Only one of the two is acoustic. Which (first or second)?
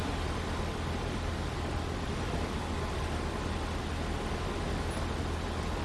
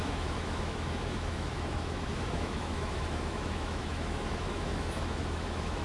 first